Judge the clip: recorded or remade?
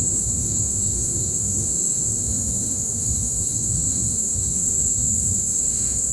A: remade